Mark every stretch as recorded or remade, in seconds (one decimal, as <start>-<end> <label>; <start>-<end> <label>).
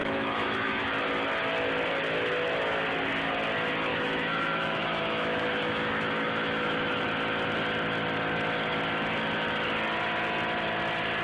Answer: 0.0-0.8 remade; 0.8-3.9 recorded; 3.9-7.0 remade; 7.0-11.2 recorded